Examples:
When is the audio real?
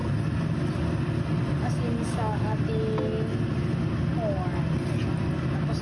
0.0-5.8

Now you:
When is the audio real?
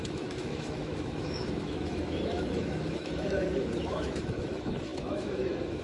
none